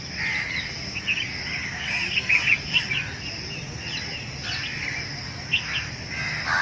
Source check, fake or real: real